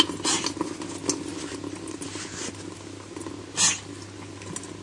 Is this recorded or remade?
recorded